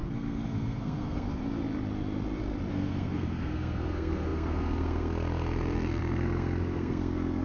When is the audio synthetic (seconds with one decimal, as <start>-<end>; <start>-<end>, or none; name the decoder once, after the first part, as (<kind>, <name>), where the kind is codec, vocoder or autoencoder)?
0.0-1.4 (codec, SNAC); 2.7-7.4